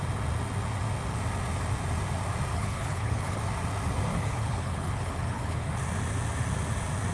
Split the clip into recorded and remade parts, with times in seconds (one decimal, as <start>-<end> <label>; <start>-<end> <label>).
0.0-2.5 recorded; 2.5-3.4 remade; 3.4-4.1 recorded; 4.1-5.7 remade; 5.7-7.1 recorded